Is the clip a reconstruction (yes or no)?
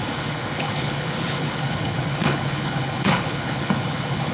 yes